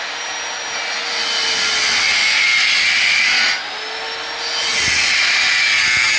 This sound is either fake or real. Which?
real